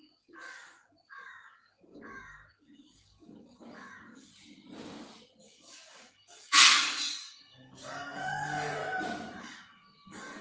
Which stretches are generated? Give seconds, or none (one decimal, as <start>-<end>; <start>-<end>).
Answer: 0.0-4.3; 5.4-8.8; 9.4-10.4